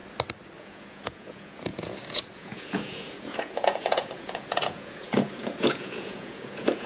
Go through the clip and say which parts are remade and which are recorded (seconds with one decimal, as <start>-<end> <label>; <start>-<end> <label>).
0.0-0.6 recorded; 0.6-6.9 remade